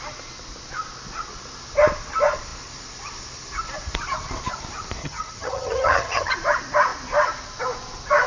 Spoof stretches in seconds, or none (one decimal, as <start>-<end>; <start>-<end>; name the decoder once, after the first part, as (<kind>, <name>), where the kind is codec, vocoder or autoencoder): 5.0-6.3 (vocoder, HiFi-GAN)